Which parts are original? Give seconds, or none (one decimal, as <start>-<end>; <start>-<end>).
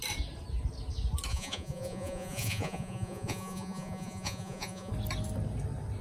0.0-1.3; 4.9-6.0